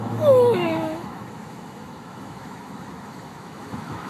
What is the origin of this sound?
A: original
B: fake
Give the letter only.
B